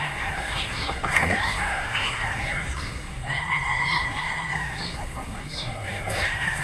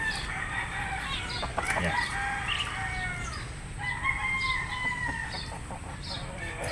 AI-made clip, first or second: first